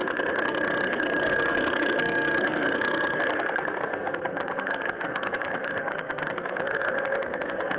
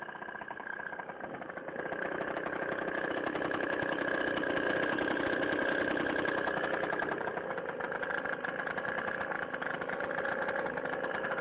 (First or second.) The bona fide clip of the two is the second